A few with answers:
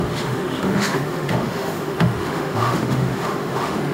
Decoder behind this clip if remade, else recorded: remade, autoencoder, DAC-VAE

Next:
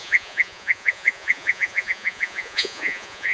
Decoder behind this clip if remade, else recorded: remade, vocoder, Vocos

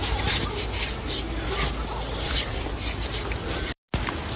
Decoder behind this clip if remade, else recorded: recorded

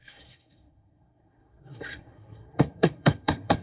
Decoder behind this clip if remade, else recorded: remade, codec, SNAC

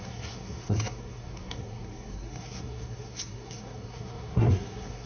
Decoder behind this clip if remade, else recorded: remade, codec, SNAC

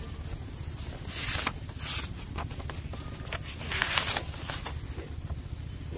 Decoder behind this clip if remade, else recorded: recorded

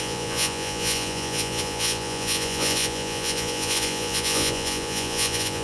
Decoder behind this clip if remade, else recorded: remade, vocoder, Vocos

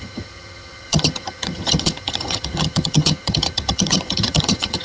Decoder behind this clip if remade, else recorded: remade, vocoder, HiFi-GAN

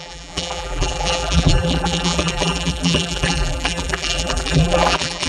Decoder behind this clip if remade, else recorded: remade, vocoder, BigVGAN v2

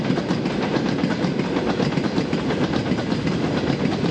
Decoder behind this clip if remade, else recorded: recorded